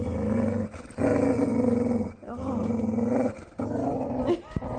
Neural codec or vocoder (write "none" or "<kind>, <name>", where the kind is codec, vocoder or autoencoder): none